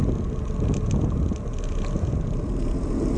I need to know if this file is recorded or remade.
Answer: recorded